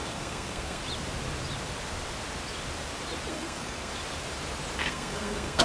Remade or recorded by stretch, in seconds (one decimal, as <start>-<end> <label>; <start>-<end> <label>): 0.0-0.8 remade; 0.8-3.3 recorded; 3.3-3.9 remade; 3.9-4.8 recorded; 4.8-5.6 remade